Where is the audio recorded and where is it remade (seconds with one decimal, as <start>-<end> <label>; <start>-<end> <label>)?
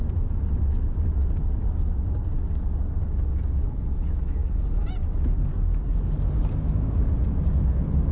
0.0-8.1 recorded